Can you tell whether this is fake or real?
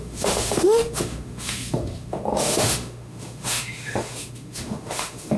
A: fake